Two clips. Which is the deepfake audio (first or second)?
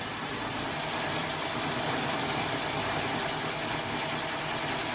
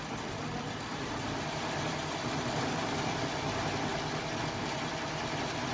second